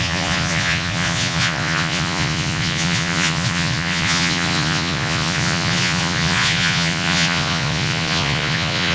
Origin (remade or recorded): remade